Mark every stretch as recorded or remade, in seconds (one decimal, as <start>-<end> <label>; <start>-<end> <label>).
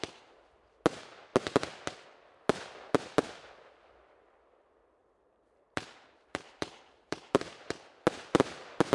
0.0-5.0 recorded; 5.0-7.5 remade; 7.5-8.9 recorded